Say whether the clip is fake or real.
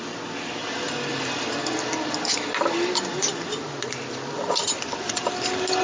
real